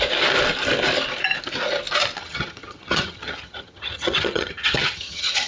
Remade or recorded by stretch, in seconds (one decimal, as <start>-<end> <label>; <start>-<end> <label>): 0.0-2.2 recorded; 2.2-5.5 remade